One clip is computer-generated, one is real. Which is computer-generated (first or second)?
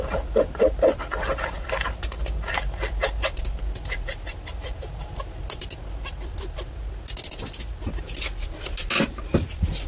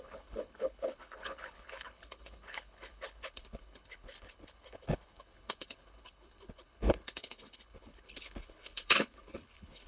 second